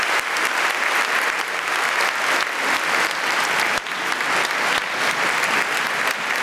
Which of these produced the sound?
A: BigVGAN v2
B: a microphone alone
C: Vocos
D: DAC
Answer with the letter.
B